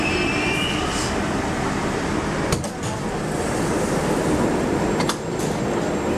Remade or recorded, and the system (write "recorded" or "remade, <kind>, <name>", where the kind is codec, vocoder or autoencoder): recorded